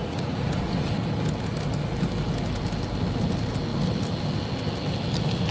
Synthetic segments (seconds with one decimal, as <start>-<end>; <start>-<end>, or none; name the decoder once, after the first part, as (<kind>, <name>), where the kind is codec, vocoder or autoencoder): 0.0-0.9 (vocoder, Vocos)